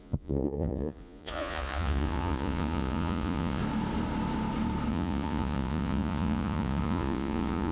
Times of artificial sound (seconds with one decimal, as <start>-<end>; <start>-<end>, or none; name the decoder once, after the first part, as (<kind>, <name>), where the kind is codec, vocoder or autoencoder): 0.0-3.6 (vocoder, Vocos); 4.9-7.7